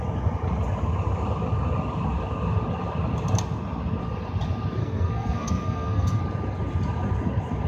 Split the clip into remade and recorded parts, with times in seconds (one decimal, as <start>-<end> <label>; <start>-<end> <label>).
0.0-4.8 recorded; 4.8-6.2 remade; 6.2-7.7 recorded